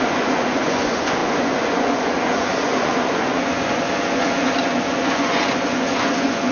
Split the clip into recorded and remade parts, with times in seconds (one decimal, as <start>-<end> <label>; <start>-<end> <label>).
0.0-6.5 remade